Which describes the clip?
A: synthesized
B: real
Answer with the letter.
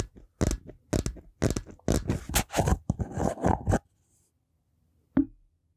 B